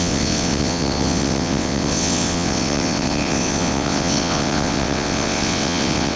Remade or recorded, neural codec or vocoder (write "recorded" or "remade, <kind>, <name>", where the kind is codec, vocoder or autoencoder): remade, vocoder, WaveNeXt